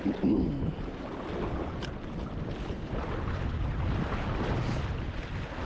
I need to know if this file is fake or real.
real